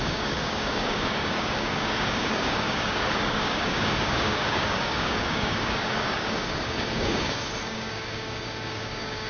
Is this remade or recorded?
remade